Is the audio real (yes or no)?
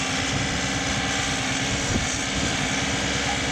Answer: yes